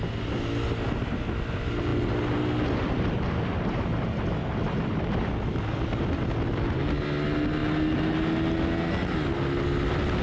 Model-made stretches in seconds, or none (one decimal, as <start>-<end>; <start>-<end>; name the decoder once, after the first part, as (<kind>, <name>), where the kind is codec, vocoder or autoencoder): none